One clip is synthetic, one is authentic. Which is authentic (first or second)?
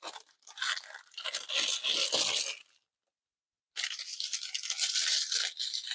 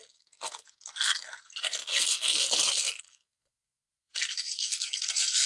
first